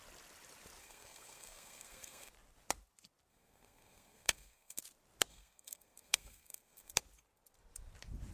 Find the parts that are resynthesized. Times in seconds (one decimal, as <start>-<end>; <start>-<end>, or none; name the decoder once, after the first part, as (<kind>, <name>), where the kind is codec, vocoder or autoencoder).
0.8-2.3 (codec, SNAC); 3.3-4.8; 5.3-6.9